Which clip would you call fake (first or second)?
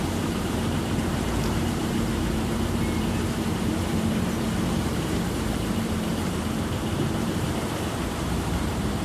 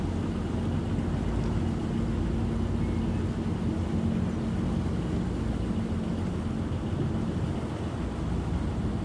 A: first